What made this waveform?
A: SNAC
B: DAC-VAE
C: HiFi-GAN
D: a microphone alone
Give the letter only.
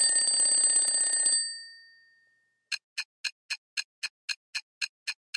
D